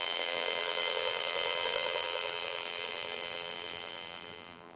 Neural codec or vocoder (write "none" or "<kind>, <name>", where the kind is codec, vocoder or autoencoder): vocoder, BigVGAN v2